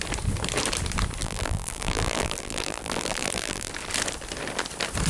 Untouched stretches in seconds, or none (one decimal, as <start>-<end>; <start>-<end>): 0.0-1.2; 3.7-5.1